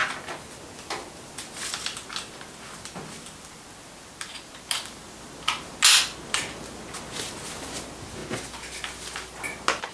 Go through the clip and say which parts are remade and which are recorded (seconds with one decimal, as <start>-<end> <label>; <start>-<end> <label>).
0.0-9.9 recorded